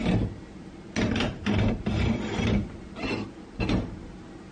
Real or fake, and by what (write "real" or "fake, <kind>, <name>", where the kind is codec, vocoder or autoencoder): real